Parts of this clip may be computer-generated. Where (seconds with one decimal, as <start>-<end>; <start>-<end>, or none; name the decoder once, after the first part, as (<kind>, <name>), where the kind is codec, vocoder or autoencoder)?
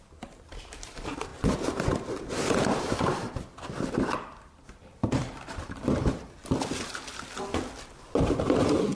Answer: none